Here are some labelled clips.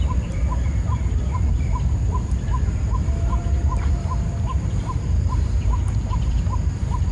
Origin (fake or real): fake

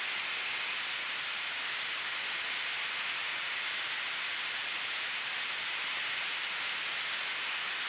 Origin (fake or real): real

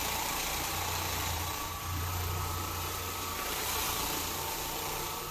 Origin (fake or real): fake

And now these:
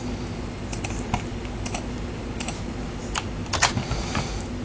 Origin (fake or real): real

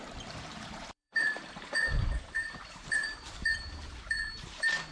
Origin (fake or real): fake